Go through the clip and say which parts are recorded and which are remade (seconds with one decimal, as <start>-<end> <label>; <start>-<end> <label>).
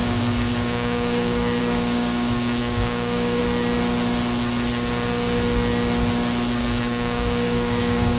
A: 0.0-3.4 remade; 3.4-6.6 recorded; 6.6-8.2 remade